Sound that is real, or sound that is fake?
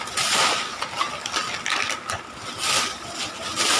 real